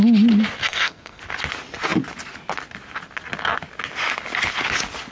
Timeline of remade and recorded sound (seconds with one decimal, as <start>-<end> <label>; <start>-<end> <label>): 0.0-0.6 recorded; 0.6-1.2 remade; 1.2-5.1 recorded